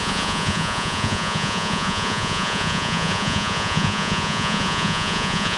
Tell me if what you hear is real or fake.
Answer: fake